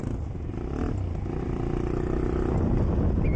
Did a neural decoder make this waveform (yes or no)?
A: no